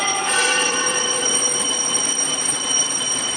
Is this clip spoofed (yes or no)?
yes